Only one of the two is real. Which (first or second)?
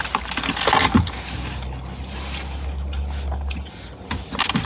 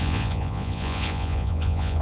first